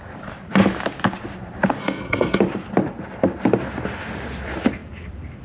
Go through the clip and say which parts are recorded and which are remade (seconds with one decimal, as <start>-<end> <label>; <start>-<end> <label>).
0.0-1.8 recorded; 1.8-2.4 remade; 2.4-5.4 recorded